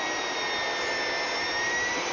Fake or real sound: real